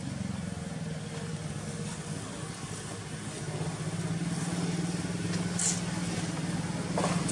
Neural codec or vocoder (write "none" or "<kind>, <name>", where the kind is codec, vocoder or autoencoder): none